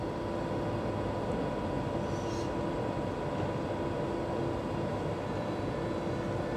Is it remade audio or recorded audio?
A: recorded